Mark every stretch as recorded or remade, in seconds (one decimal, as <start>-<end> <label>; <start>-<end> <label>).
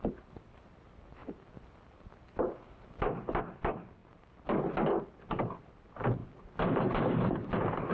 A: 0.0-1.2 remade; 1.2-3.4 recorded; 3.4-4.0 remade; 4.0-5.6 recorded; 5.6-6.2 remade; 6.2-6.9 recorded; 6.9-7.9 remade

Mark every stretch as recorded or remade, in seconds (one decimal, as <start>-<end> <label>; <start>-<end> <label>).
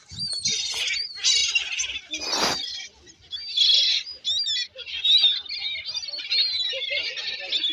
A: 0.0-7.7 recorded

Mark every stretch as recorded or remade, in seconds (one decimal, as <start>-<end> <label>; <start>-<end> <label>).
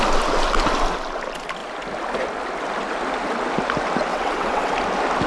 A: 0.0-4.1 recorded; 4.1-4.7 remade; 4.7-5.3 recorded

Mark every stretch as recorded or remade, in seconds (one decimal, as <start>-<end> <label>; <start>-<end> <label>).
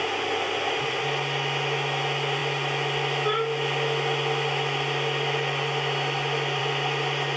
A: 0.0-7.4 recorded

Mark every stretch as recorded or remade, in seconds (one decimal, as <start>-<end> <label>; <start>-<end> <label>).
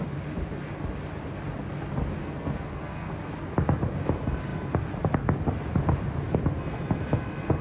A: 0.0-2.2 recorded; 2.2-3.1 remade; 3.1-7.6 recorded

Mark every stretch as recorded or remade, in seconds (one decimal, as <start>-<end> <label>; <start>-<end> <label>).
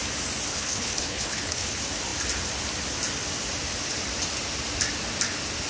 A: 0.0-0.5 recorded; 0.5-1.7 remade; 1.7-5.7 recorded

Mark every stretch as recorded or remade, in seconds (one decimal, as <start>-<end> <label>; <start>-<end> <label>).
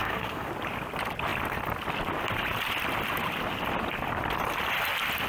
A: 0.0-0.5 remade; 0.5-5.3 recorded